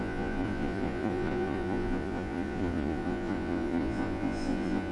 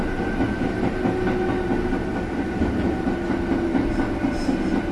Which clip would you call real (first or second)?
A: second